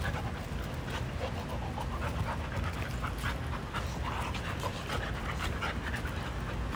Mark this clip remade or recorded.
recorded